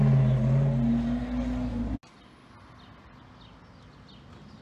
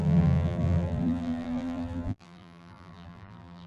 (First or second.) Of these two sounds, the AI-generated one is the second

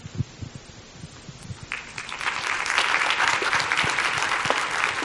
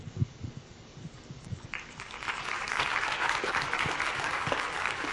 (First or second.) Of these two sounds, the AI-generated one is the second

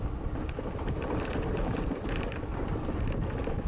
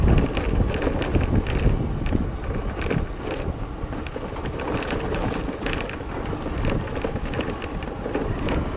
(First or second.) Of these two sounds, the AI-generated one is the first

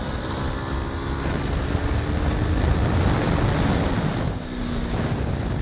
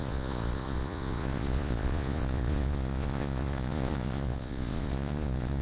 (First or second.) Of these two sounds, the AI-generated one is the second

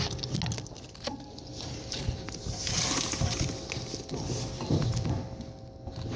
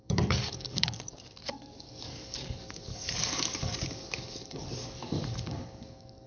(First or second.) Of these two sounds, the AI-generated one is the second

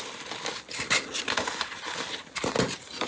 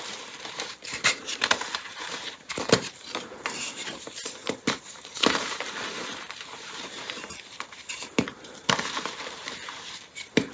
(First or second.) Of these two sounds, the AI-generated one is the second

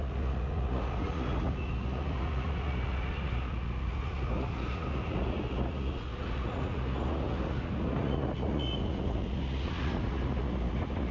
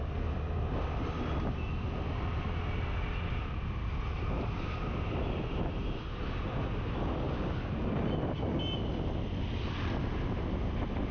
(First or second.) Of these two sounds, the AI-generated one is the first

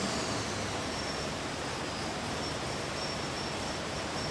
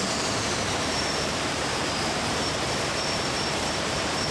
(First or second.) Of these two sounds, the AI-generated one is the second